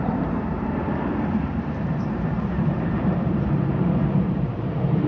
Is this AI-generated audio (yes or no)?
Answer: yes